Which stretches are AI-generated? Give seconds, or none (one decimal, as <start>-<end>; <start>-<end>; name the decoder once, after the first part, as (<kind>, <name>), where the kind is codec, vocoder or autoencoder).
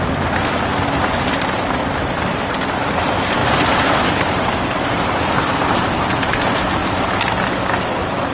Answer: 3.4-5.9 (vocoder, BigVGAN v2)